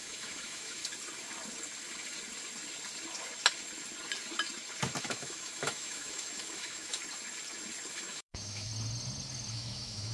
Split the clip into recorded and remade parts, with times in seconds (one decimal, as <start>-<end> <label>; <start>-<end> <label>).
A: 0.0-0.8 remade; 0.8-5.0 recorded; 5.0-7.0 remade; 7.0-7.9 recorded; 7.9-8.7 remade; 8.7-9.5 recorded; 9.5-10.1 remade